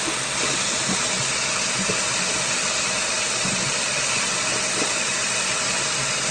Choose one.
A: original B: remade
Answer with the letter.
A